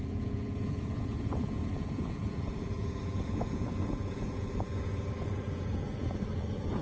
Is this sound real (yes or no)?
no